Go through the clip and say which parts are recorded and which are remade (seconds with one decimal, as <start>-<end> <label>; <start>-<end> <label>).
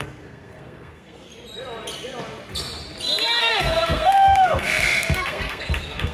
0.0-1.3 remade; 1.3-3.4 recorded; 3.4-6.1 remade